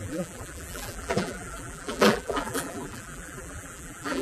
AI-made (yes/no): yes